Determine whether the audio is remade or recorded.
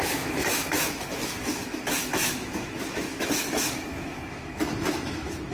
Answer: remade